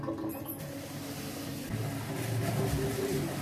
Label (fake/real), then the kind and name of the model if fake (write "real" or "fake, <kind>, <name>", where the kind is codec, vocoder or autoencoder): real